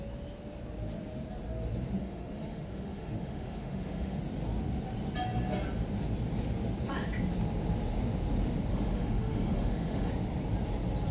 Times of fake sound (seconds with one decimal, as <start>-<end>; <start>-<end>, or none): 2.0-4.2; 8.7-10.1